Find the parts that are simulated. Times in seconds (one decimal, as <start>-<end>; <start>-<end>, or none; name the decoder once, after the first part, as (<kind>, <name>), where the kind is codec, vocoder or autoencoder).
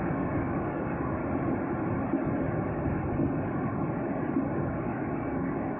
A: 0.0-1.2 (codec, DAC); 4.7-5.8